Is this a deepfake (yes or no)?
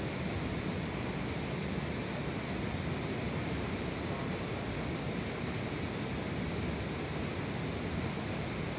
no